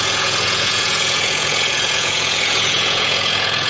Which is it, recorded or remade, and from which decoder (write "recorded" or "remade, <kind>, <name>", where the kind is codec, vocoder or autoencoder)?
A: remade, vocoder, Vocos